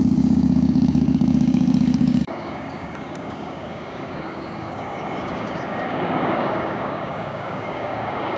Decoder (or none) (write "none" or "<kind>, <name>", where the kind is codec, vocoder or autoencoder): codec, DAC